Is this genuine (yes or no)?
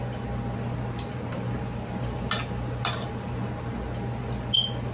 yes